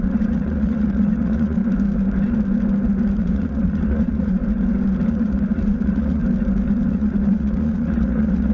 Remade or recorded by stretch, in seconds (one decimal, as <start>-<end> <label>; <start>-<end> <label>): 0.0-1.6 remade; 1.6-3.2 recorded; 3.2-4.4 remade; 4.4-5.1 recorded; 5.1-6.2 remade; 6.2-6.9 recorded; 6.9-8.5 remade